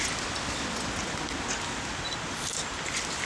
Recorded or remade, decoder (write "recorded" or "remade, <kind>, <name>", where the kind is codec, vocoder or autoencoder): recorded